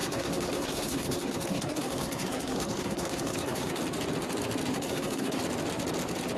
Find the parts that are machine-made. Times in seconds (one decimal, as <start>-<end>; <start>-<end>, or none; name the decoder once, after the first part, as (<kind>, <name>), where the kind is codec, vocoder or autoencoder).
0.0-3.8 (codec, SNAC); 4.7-5.4